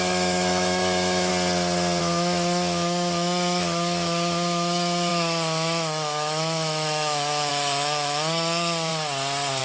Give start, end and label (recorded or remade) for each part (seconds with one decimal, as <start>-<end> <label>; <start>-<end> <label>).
0.0-1.3 remade; 1.3-2.0 recorded; 2.0-8.9 remade; 8.9-9.6 recorded